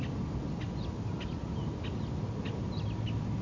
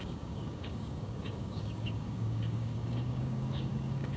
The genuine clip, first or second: first